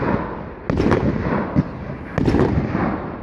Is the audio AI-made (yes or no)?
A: no